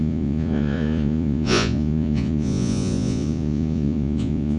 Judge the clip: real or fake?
fake